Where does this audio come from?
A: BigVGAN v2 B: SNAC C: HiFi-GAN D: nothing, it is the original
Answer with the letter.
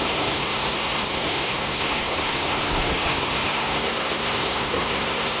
B